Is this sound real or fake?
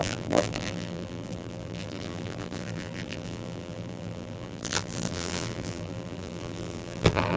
fake